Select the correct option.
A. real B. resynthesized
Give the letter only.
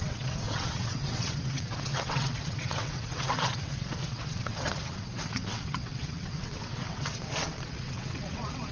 B